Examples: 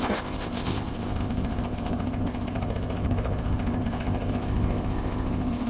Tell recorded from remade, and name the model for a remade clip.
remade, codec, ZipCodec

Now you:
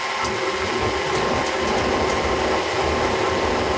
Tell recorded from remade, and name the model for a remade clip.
recorded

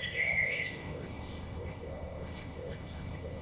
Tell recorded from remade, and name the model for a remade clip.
remade, codec, ZipCodec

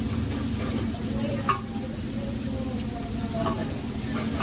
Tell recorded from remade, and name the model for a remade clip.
recorded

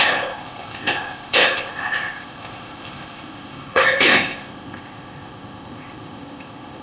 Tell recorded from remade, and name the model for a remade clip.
remade, codec, ZipCodec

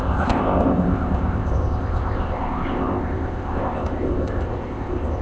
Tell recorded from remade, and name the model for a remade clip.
remade, codec, ZipCodec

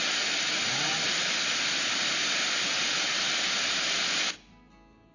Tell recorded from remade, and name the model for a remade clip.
recorded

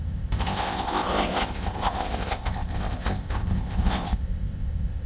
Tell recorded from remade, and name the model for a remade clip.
remade, codec, ZipCodec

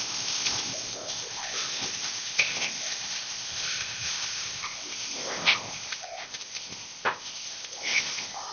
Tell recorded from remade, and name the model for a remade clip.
remade, codec, ZipCodec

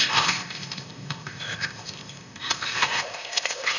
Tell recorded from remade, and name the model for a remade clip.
remade, codec, ZipCodec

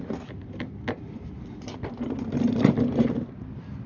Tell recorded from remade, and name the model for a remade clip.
recorded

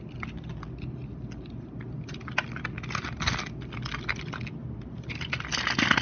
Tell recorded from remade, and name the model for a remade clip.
recorded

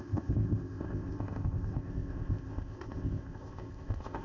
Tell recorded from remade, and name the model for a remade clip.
remade, codec, ZipCodec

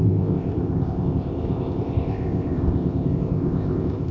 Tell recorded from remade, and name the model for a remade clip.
remade, codec, ZipCodec